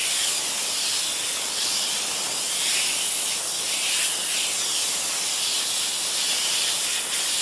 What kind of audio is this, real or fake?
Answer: real